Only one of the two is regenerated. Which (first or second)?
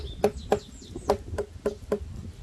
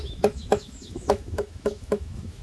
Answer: second